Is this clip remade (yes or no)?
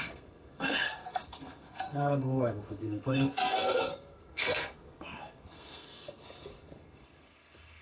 yes